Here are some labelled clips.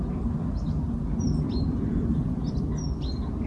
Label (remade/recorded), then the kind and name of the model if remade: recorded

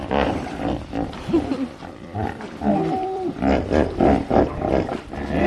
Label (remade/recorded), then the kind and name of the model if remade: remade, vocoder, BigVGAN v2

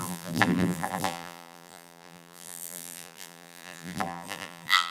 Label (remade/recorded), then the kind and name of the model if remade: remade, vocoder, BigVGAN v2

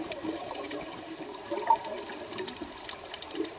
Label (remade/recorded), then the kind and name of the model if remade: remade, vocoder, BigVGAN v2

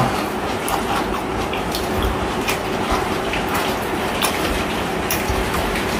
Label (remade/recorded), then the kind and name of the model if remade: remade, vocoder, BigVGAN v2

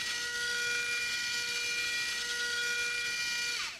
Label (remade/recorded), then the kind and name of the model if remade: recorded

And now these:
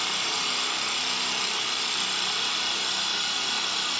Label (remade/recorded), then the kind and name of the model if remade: recorded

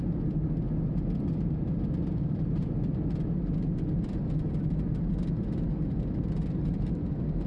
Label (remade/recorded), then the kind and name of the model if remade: remade, vocoder, BigVGAN v2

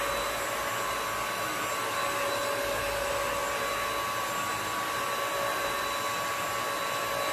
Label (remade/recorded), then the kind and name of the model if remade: recorded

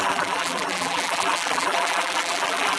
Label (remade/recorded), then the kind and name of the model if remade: remade, vocoder, BigVGAN v2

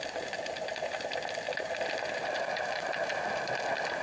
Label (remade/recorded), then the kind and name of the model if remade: recorded